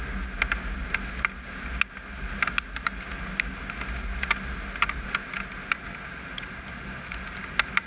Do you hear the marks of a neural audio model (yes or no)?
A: no